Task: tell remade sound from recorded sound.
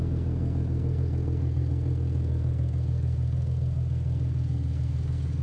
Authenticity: remade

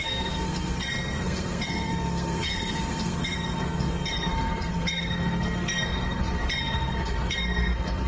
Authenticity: remade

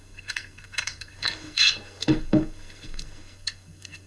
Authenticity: remade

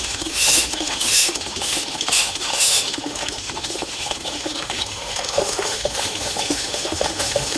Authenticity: remade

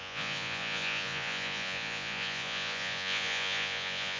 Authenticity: remade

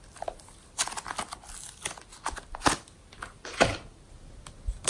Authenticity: recorded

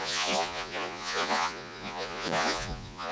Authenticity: remade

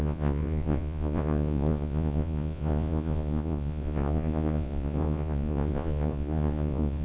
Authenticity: remade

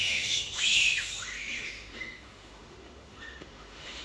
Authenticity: remade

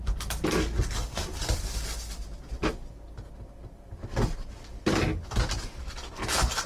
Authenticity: recorded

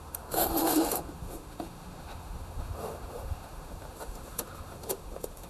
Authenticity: remade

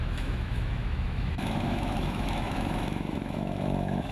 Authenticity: remade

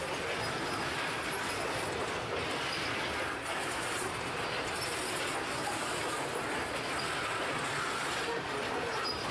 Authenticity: recorded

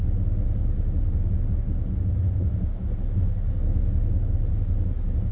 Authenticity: recorded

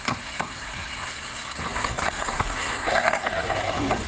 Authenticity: remade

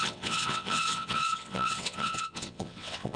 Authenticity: remade